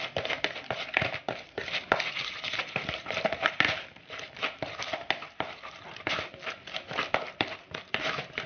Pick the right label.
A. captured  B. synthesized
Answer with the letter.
A